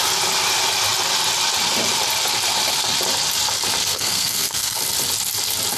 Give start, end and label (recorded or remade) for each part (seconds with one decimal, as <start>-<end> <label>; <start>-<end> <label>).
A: 0.0-3.9 recorded; 3.9-4.8 remade; 4.8-5.8 recorded